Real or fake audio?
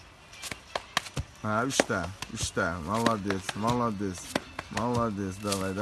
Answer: real